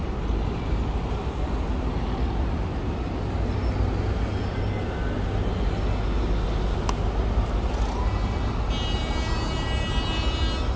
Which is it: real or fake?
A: real